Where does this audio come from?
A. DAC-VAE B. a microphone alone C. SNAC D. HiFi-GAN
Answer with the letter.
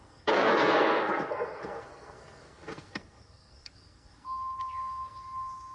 C